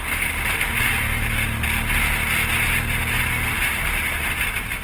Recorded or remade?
recorded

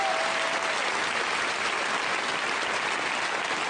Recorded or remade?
recorded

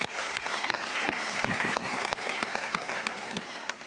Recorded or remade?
remade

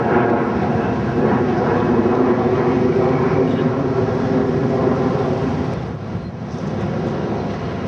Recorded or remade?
recorded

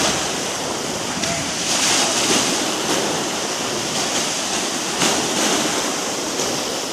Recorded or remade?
remade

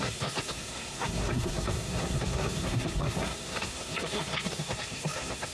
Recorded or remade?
remade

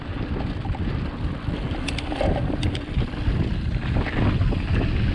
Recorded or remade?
recorded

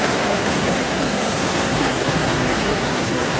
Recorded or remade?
remade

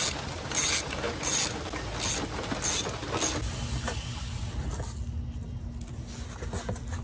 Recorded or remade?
recorded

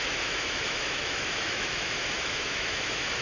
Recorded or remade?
remade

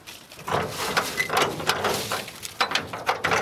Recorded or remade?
remade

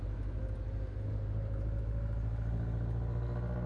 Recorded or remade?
recorded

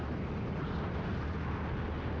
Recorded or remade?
recorded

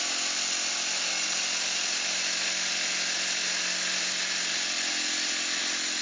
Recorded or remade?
recorded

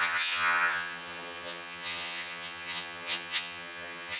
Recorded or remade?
remade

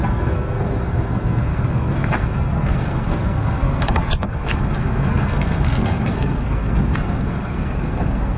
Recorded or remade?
remade